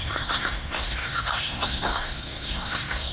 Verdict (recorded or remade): remade